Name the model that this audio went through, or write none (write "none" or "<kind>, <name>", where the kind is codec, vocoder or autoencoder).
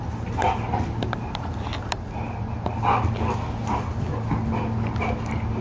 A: none